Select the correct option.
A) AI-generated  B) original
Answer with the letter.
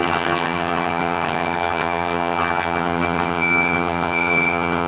A